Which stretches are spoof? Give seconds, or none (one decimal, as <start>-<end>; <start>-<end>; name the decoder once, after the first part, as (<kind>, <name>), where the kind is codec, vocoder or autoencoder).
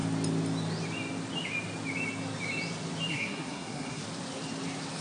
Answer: 3.1-4.0 (codec, SNAC)